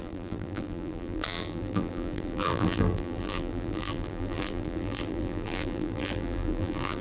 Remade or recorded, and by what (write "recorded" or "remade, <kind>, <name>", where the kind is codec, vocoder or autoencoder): remade, vocoder, BigVGAN v2